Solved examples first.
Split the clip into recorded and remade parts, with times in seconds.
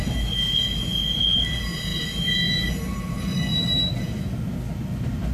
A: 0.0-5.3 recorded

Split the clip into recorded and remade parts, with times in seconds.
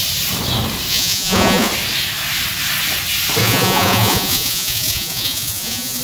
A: 0.0-0.9 recorded; 0.9-1.7 remade; 1.7-3.4 recorded; 3.4-6.0 remade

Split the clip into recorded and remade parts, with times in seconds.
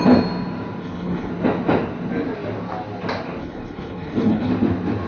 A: 0.0-0.8 recorded; 0.8-1.3 remade; 1.3-3.4 recorded; 3.4-4.5 remade; 4.5-5.1 recorded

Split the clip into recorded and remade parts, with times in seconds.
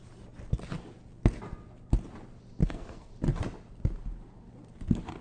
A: 0.0-2.6 recorded; 2.6-3.1 remade; 3.1-5.2 recorded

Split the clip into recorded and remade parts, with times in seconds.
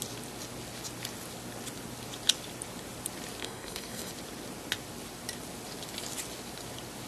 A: 0.0-3.4 recorded; 3.4-4.1 remade; 4.1-7.1 recorded